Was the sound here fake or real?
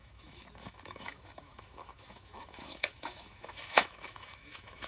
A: fake